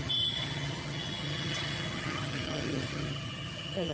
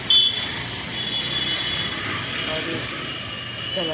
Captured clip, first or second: second